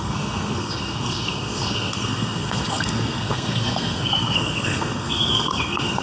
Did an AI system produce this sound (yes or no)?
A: yes